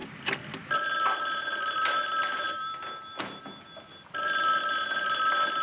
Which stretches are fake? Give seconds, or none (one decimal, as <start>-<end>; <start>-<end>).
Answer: none